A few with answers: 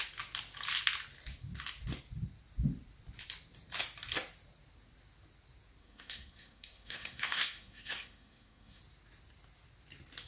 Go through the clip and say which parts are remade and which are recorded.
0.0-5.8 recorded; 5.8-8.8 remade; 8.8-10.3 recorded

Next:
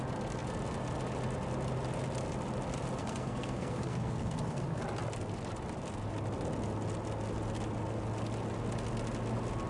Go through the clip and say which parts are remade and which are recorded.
0.0-3.0 recorded; 3.0-4.8 remade; 4.8-9.7 recorded

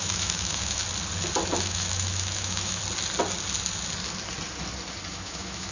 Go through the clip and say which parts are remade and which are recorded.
0.0-0.8 remade; 0.8-1.6 recorded; 1.6-2.8 remade; 2.8-5.1 recorded; 5.1-5.7 remade

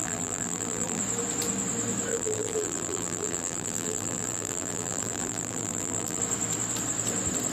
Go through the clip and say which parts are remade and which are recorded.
0.0-1.0 remade; 1.0-2.1 recorded; 2.1-6.2 remade; 6.2-7.5 recorded

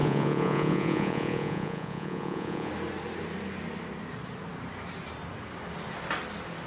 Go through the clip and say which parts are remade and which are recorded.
0.0-2.7 remade; 2.7-6.7 recorded

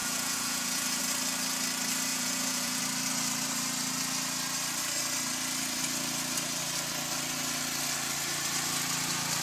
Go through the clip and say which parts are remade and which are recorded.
0.0-1.0 remade; 1.0-2.1 recorded; 2.1-2.8 remade; 2.8-9.4 recorded

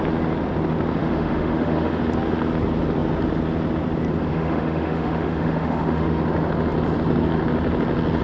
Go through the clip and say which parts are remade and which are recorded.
0.0-1.0 recorded; 1.0-2.0 remade; 2.0-4.3 recorded; 4.3-6.2 remade; 6.2-8.2 recorded

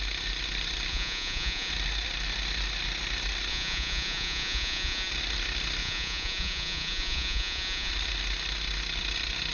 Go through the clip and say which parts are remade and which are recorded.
0.0-0.9 recorded; 0.9-1.7 remade; 1.7-3.5 recorded; 3.5-5.1 remade; 5.1-5.8 recorded; 5.8-7.9 remade; 7.9-9.5 recorded